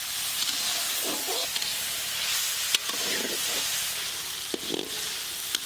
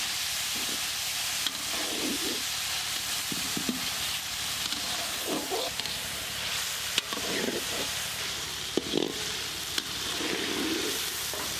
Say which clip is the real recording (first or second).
first